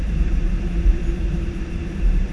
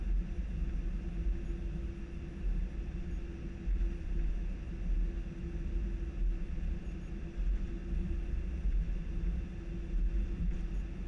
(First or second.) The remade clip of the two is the first